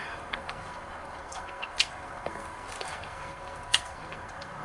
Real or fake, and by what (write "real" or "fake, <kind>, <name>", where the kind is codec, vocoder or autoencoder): fake, codec, SNAC